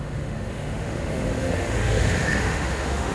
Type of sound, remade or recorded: remade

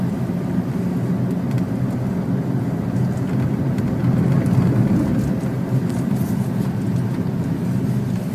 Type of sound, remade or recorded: recorded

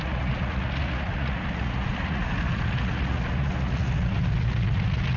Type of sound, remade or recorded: remade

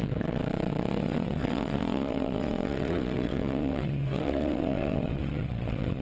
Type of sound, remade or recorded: remade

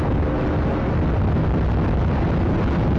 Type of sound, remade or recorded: recorded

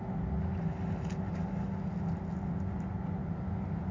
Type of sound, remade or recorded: recorded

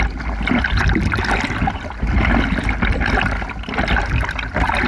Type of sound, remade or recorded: recorded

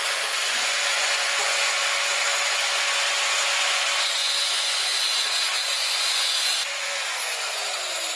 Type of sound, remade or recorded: remade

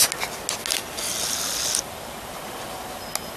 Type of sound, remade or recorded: recorded